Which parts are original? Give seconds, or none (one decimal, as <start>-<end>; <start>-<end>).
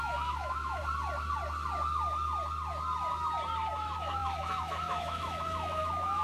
0.8-3.7